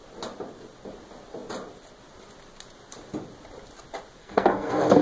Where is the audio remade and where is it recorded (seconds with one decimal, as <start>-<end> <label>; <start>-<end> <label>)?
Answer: 0.0-4.2 recorded; 4.2-5.0 remade